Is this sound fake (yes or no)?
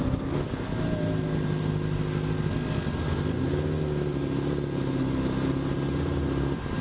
no